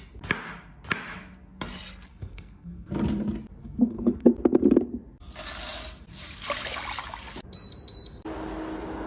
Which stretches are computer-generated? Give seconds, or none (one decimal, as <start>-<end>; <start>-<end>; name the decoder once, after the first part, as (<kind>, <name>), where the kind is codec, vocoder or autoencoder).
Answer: 2.1-2.9 (codec, SNAC); 3.6-4.3